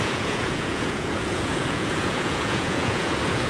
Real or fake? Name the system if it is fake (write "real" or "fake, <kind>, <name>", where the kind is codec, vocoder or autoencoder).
fake, vocoder, Vocos